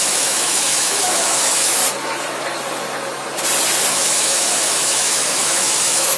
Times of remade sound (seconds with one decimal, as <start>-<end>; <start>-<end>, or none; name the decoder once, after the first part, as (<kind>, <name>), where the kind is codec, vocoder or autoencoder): 0.0-1.8 (autoencoder, DAC-VAE); 3.9-6.2